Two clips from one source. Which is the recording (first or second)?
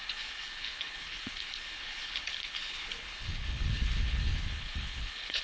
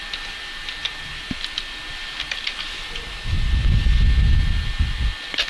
second